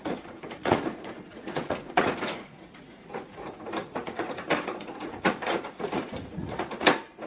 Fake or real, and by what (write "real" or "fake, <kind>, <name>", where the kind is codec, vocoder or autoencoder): fake, vocoder, Vocos